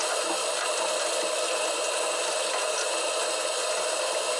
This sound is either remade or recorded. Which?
recorded